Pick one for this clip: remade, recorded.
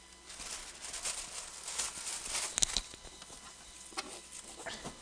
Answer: recorded